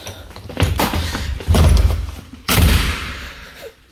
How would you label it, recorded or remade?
remade